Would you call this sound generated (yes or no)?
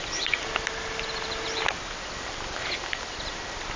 no